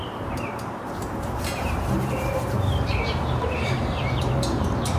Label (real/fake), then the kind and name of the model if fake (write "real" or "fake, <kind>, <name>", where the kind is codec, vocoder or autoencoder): fake, vocoder, BigVGAN v2